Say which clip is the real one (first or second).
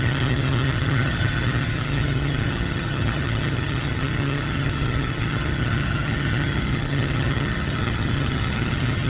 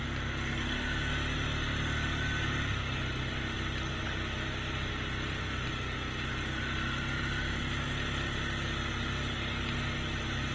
second